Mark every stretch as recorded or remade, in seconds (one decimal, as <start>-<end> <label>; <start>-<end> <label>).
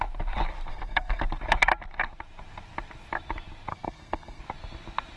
0.0-0.7 recorded; 0.7-1.2 remade; 1.2-3.7 recorded; 3.7-4.4 remade; 4.4-5.2 recorded